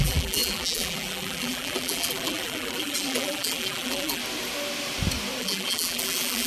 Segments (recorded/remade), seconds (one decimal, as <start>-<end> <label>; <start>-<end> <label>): 0.0-4.2 remade; 4.2-5.4 recorded; 5.4-6.5 remade